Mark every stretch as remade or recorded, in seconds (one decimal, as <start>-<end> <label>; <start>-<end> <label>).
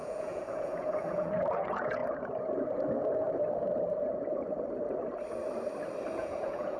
0.0-2.0 remade; 2.0-6.1 recorded; 6.1-6.8 remade